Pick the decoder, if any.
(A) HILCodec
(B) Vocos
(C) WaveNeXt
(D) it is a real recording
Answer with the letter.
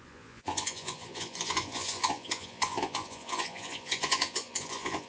B